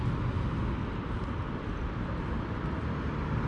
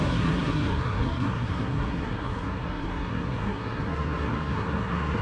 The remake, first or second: second